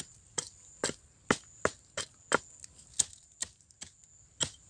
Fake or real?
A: real